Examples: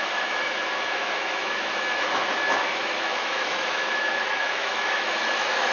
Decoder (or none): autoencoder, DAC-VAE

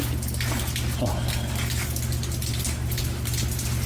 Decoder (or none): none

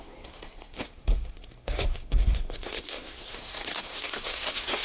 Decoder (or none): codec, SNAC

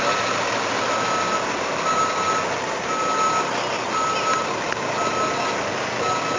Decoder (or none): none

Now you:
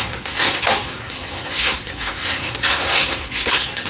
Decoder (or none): codec, SNAC